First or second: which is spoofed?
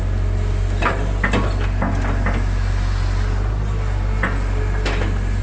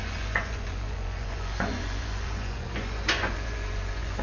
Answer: second